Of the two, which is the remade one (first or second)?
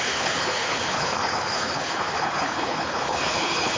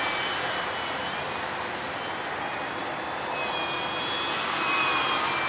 first